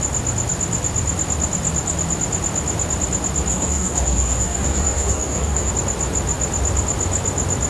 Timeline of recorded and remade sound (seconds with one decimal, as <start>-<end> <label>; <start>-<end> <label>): 0.0-3.5 recorded; 3.5-5.7 remade; 5.7-7.7 recorded